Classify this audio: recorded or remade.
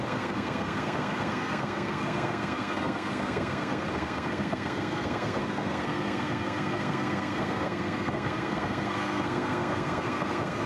remade